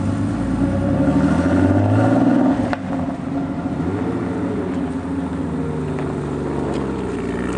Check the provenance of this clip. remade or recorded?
recorded